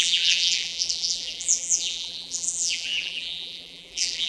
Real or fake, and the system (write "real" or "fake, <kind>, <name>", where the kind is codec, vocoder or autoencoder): fake, vocoder, BigVGAN v2